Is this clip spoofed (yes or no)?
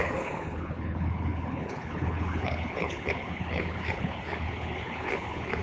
yes